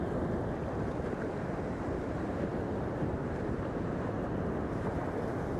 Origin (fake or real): real